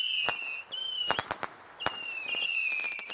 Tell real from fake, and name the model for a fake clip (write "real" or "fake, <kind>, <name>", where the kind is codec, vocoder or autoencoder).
real